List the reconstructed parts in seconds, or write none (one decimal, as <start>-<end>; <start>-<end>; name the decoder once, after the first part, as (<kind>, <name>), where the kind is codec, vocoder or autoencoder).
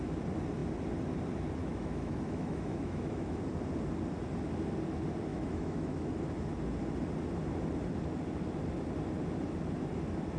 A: 1.6-3.4 (autoencoder, DAC-VAE); 5.3-6.1